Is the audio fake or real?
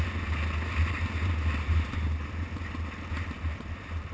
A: real